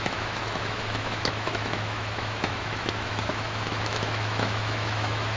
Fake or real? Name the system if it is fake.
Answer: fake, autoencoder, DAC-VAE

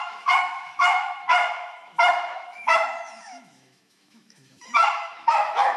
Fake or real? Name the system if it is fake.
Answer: fake, autoencoder, DAC-VAE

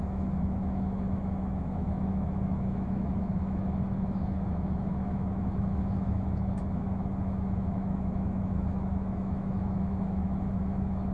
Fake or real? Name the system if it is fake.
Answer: fake, autoencoder, DAC-VAE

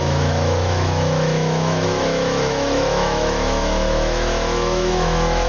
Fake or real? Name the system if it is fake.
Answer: fake, autoencoder, DAC-VAE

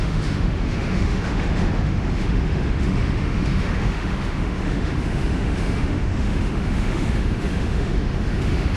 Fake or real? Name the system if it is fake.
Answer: fake, autoencoder, DAC-VAE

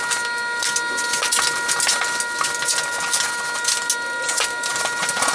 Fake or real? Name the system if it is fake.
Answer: real